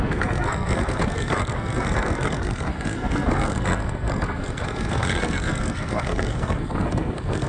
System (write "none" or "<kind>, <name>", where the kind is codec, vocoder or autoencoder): codec, SNAC